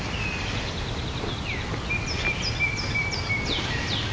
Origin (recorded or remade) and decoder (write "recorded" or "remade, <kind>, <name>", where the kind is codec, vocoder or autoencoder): recorded